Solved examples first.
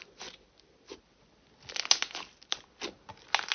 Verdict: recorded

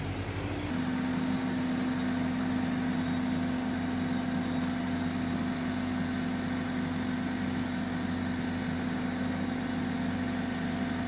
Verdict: recorded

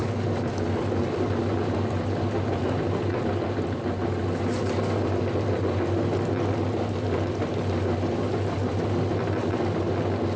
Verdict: recorded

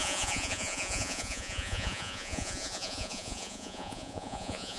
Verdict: remade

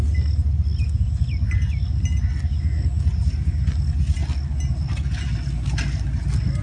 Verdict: recorded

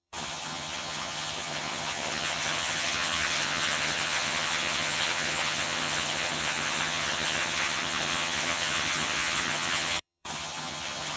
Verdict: remade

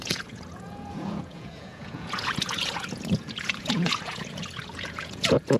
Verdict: remade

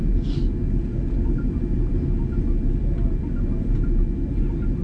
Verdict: recorded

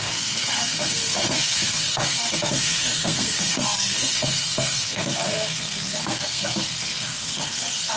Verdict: remade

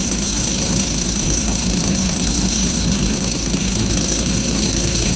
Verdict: remade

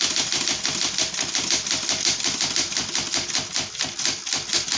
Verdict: recorded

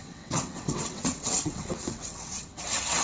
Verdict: remade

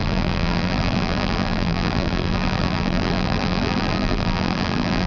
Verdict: remade